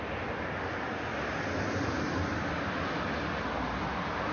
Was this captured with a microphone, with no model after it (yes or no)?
yes